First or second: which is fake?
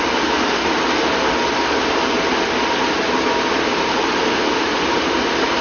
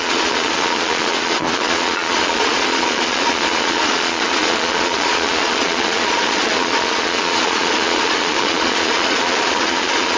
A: second